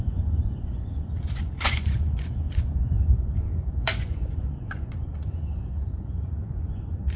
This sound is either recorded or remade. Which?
remade